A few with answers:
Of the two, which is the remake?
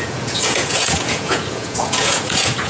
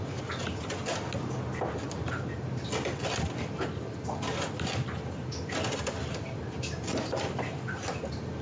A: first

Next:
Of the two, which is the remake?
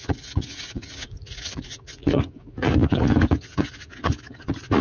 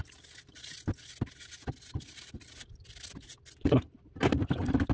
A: first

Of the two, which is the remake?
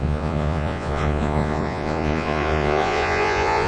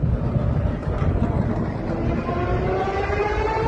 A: first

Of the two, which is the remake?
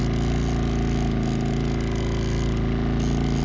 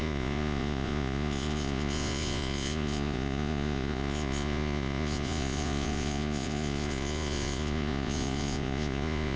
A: second